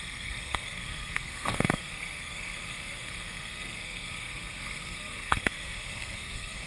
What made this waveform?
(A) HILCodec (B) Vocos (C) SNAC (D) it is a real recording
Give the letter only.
C